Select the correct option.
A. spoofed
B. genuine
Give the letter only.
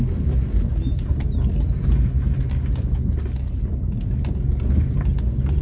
B